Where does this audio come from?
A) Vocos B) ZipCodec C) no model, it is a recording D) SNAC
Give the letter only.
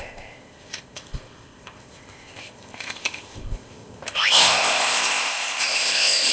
B